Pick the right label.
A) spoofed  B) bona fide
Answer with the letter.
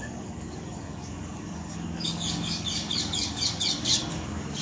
A